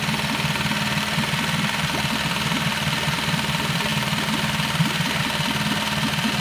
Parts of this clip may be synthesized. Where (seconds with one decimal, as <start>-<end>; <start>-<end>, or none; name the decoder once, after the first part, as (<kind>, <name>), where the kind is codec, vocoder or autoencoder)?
none